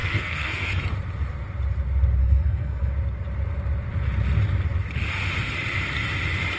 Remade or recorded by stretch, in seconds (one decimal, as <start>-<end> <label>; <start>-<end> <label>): 0.0-0.7 remade; 0.7-2.2 recorded; 2.2-2.9 remade; 2.9-6.6 recorded